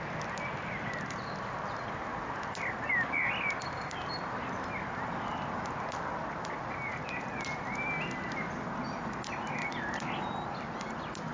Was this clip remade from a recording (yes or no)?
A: no